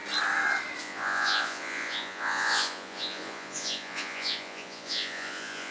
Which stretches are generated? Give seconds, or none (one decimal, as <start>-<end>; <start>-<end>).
0.8-5.7